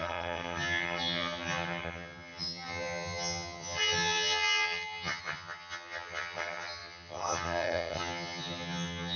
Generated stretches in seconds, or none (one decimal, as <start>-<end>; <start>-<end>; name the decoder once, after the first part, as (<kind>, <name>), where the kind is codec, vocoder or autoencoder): 0.0-9.2 (vocoder, HiFi-GAN)